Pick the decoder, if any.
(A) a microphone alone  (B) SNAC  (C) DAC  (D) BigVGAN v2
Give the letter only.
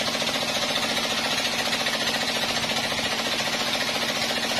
A